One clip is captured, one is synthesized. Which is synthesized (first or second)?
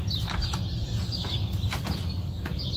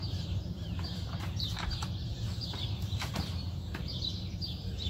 second